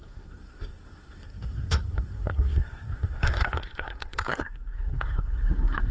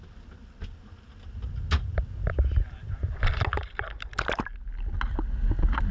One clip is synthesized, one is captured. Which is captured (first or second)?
second